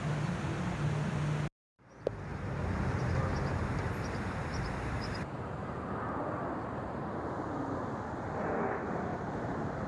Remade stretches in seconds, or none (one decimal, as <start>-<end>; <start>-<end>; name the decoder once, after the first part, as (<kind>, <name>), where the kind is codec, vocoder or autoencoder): 2.3-7.3 (vocoder, BigVGAN v2); 9.1-9.9